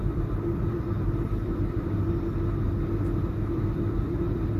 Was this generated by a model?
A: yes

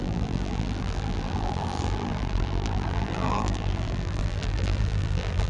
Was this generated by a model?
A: yes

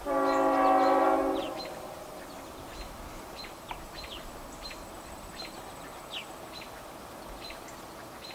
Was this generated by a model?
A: no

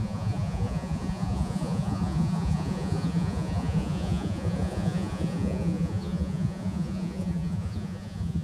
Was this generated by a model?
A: yes